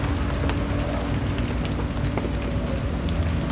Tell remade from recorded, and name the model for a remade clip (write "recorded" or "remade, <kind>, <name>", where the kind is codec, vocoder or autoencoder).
recorded